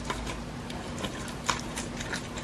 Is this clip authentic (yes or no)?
yes